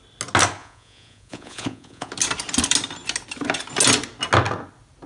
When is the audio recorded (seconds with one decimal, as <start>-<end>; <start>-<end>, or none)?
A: 0.0-0.6; 2.1-5.1